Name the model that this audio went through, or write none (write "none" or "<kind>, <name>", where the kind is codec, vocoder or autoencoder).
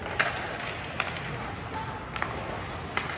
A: none